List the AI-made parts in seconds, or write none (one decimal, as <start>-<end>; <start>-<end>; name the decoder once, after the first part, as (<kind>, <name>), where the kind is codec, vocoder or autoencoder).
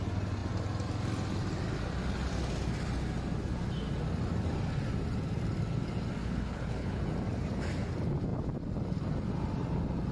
6.2-7.0 (codec, HILCodec)